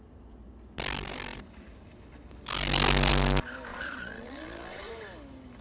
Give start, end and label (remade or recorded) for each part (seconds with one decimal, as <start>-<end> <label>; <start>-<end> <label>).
0.0-3.7 recorded; 3.7-4.9 remade; 4.9-5.6 recorded